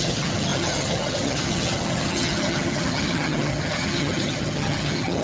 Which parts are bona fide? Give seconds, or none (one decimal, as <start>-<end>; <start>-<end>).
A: none